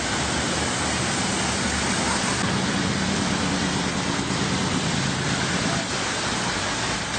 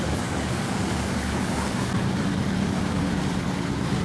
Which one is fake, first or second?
second